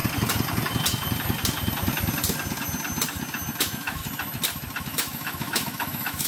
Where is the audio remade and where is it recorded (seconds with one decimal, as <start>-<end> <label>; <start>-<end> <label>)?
0.0-3.6 recorded; 3.6-4.0 remade; 4.0-4.8 recorded; 4.8-6.3 remade